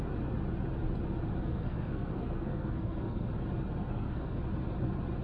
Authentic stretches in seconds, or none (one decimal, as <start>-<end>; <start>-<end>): 0.0-1.4; 3.3-3.9; 4.4-5.2